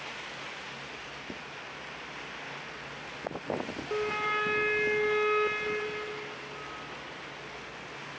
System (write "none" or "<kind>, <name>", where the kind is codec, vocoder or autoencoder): none